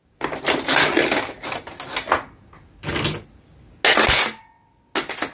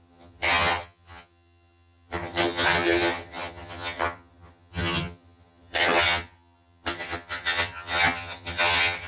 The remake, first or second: second